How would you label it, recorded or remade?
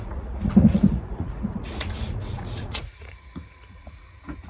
remade